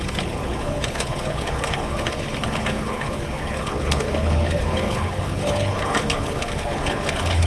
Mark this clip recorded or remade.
remade